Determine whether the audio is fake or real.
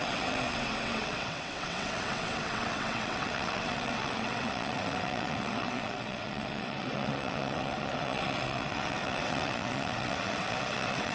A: fake